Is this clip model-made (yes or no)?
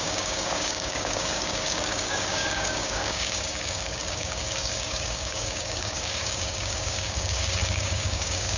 yes